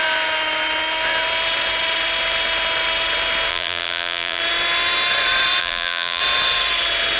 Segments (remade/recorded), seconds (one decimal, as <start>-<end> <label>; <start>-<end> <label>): 0.0-3.5 recorded; 3.5-4.4 remade; 4.4-5.6 recorded; 5.6-6.2 remade; 6.2-7.2 recorded